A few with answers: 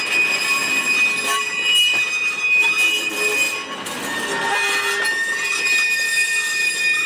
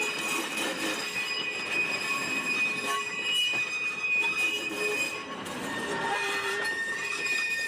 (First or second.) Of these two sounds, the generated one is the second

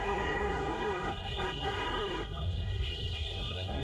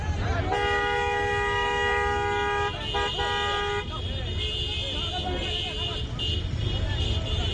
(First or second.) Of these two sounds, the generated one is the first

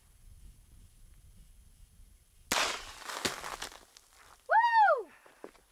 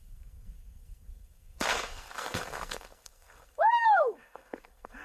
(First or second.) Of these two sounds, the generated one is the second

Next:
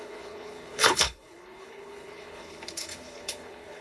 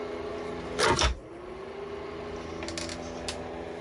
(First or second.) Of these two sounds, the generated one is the first